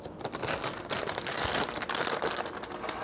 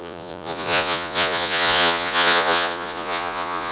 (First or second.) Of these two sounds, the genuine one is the first